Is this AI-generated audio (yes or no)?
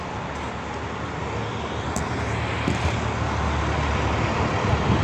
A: no